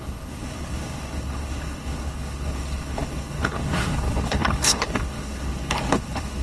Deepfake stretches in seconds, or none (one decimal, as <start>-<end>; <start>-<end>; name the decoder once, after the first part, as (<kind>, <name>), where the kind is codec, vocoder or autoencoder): 0.0-6.4 (codec, HILCodec)